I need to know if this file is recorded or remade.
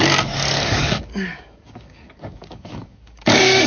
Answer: remade